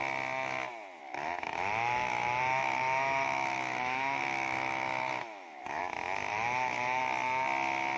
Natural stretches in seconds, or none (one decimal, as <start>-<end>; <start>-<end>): 0.0-1.0; 5.8-6.3; 7.0-8.0